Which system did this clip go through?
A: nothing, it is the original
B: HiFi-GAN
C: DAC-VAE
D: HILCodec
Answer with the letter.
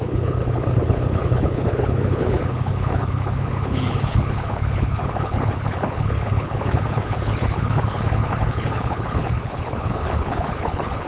D